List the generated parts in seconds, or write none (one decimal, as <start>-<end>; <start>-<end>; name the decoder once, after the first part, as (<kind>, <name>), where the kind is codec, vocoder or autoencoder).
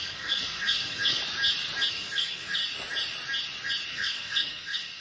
0.0-1.2 (codec, SNAC); 1.9-2.6; 3.9-5.0